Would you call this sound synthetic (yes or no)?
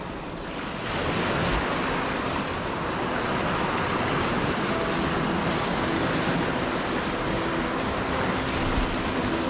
no